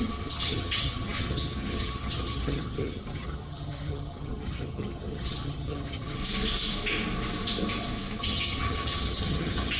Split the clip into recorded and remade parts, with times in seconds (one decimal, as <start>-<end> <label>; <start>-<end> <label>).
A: 0.0-6.2 remade; 6.2-8.2 recorded; 8.2-9.8 remade